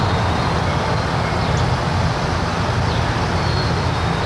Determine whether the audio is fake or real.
fake